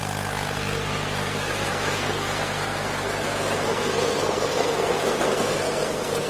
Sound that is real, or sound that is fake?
fake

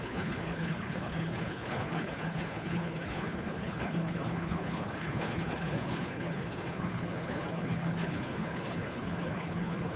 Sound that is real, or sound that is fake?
fake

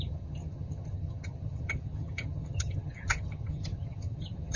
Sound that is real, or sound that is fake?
fake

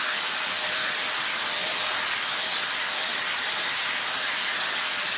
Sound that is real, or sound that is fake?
real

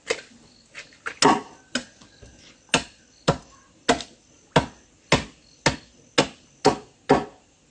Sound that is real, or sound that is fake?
real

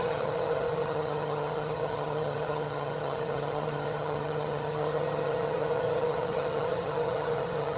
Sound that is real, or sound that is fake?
fake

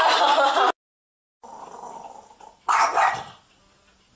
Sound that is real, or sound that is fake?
real